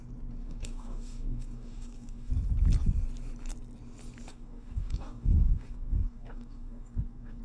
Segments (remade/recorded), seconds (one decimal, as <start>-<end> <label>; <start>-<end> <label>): 0.0-0.4 recorded; 0.4-2.3 remade; 2.3-4.3 recorded; 4.3-7.4 remade

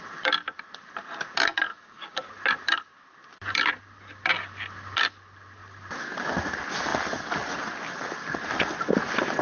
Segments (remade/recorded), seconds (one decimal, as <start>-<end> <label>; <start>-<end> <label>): 0.0-1.7 recorded; 1.7-2.3 remade; 2.3-9.4 recorded

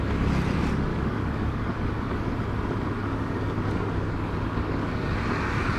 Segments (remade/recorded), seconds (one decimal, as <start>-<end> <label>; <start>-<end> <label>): 0.0-0.9 recorded; 0.9-2.3 remade; 2.3-3.0 recorded; 3.0-5.1 remade; 5.1-5.8 recorded

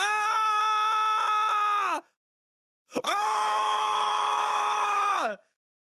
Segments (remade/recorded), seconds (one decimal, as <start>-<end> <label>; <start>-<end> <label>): 0.0-0.6 remade; 0.6-2.0 recorded; 2.0-5.9 remade

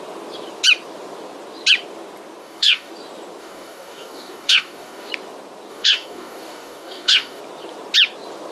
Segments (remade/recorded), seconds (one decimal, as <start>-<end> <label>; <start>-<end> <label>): 0.0-2.4 recorded; 2.4-2.9 remade; 2.9-3.4 recorded; 3.4-5.1 remade; 5.1-5.7 recorded; 5.7-7.4 remade; 7.4-8.5 recorded